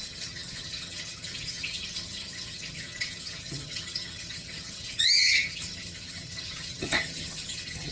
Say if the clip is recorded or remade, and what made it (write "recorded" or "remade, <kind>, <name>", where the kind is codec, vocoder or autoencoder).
remade, vocoder, HiFi-GAN